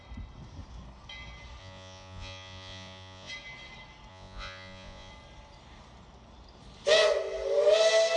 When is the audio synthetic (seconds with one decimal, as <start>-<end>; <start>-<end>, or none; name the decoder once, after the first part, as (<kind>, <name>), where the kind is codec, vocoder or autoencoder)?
1.6-3.3 (vocoder, Vocos); 4.1-5.1